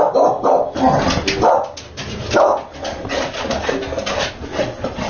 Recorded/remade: recorded